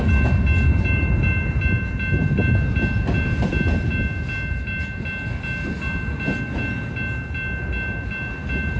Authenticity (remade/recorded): recorded